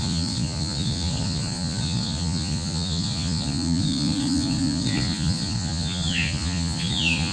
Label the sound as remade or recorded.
remade